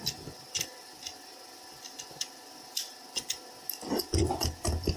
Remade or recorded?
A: recorded